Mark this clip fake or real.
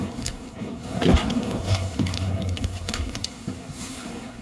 fake